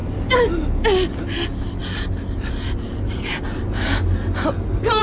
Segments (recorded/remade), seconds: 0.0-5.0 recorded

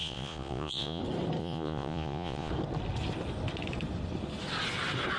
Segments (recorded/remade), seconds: 0.0-1.0 remade; 1.0-1.4 recorded; 1.4-2.5 remade; 2.5-5.2 recorded